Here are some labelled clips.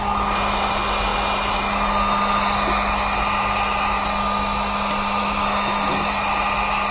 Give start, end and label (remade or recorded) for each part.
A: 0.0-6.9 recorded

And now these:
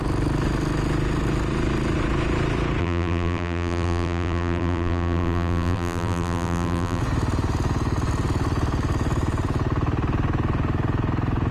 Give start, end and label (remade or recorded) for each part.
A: 0.0-2.8 recorded; 2.8-7.0 remade; 7.0-11.5 recorded

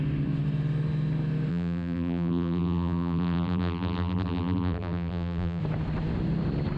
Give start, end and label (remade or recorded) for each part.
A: 0.0-1.5 recorded; 1.5-5.6 remade; 5.6-6.8 recorded